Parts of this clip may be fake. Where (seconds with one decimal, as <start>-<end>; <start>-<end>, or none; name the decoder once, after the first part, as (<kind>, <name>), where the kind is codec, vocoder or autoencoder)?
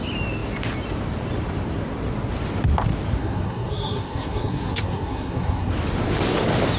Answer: 3.2-5.7 (codec, SNAC)